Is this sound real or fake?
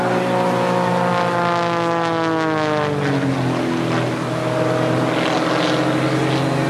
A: real